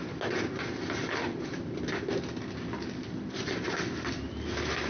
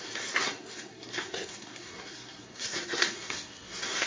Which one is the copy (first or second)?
second